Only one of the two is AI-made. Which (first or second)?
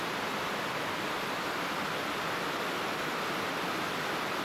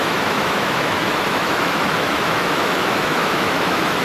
second